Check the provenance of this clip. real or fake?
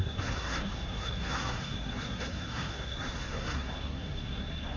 fake